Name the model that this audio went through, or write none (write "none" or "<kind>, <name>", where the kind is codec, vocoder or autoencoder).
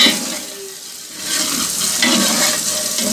none